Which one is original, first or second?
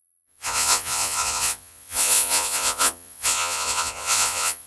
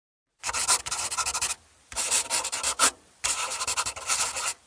second